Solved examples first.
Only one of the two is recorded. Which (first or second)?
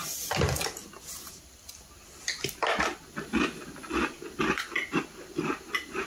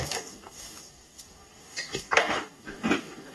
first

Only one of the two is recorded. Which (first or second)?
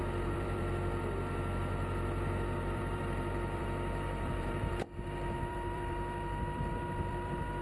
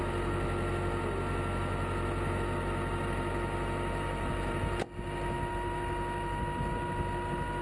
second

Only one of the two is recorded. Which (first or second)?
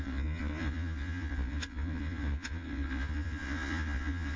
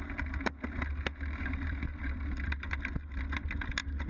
second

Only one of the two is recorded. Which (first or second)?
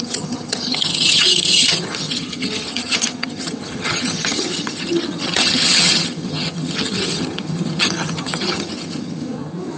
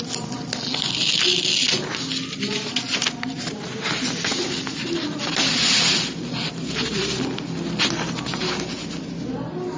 second